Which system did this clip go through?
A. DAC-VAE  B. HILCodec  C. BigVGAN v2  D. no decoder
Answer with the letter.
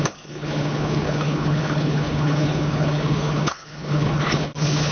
B